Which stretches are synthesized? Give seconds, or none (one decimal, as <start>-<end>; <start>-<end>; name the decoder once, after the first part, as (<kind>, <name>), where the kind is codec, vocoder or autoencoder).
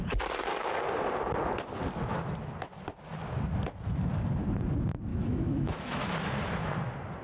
5.1-6.1 (autoencoder, DAC-VAE)